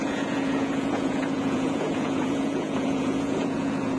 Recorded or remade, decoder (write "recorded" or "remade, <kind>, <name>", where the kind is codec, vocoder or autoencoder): remade, vocoder, Vocos